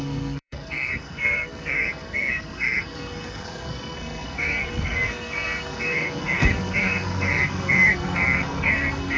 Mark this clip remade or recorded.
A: remade